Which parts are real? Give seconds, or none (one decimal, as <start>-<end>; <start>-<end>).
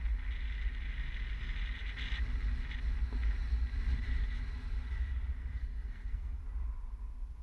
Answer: 0.0-5.4; 6.4-7.4